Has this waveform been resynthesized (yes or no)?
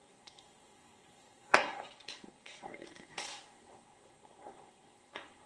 yes